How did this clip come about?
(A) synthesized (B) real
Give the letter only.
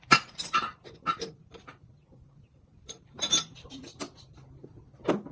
B